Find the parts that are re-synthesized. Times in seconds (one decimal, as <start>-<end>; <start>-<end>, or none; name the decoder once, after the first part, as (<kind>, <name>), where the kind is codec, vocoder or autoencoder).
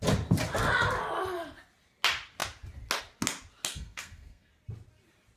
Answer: 3.7-4.5 (codec, SNAC)